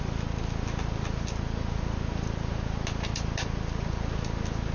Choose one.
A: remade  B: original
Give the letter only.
B